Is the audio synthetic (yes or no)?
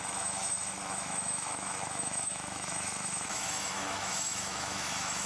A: yes